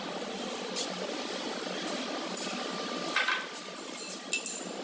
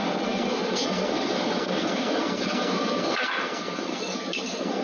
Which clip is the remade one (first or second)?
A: second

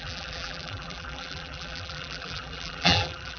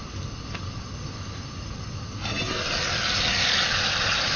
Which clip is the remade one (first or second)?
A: first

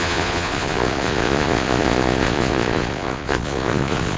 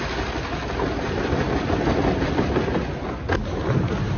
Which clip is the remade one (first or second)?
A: first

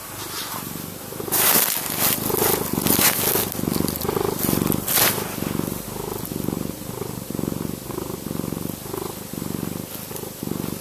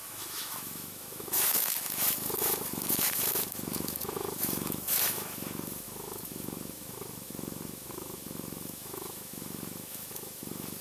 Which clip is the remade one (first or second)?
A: second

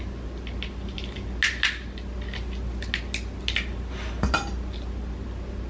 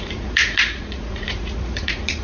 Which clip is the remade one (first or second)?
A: second